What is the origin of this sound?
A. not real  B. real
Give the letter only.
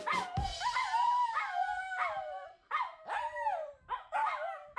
B